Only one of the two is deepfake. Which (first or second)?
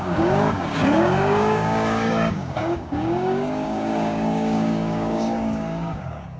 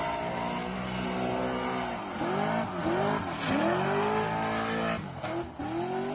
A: first